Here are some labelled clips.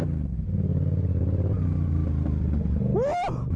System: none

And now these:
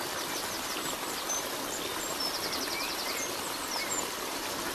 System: none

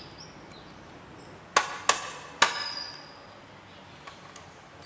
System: none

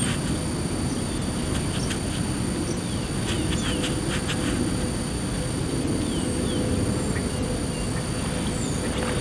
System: none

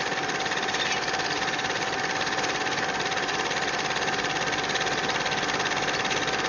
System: none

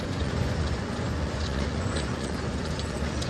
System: vocoder, Vocos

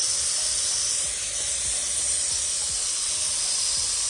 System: none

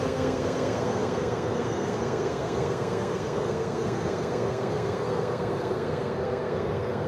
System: codec, SNAC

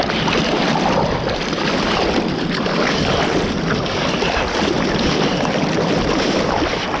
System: none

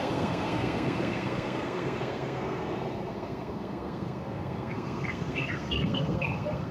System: codec, SNAC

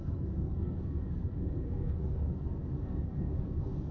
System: codec, SNAC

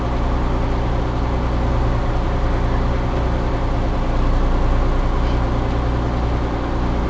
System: none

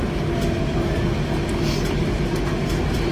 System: none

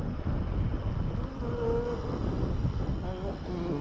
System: none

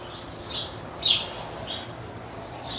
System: none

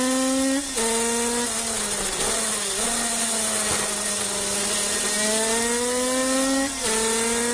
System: none